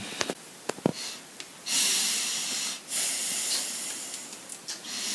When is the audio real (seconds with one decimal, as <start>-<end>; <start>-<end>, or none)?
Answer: 0.0-5.1